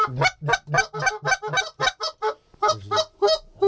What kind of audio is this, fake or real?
real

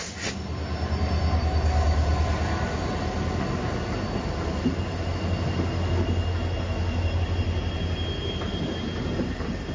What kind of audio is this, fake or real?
real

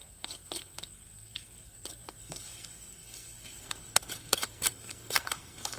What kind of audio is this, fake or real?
fake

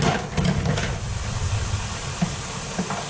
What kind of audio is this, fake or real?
real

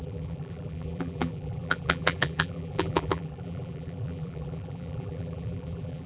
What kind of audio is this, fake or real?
fake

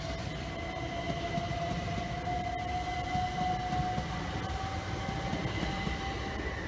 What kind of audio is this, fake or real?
real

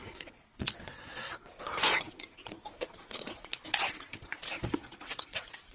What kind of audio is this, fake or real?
fake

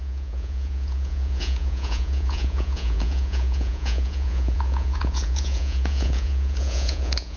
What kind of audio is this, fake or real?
fake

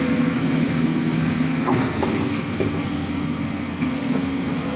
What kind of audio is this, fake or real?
fake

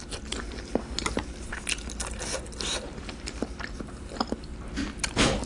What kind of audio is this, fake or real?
real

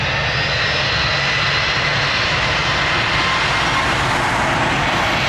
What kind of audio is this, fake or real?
real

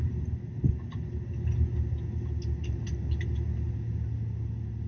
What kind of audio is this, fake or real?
real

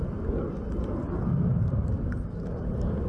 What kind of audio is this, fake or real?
real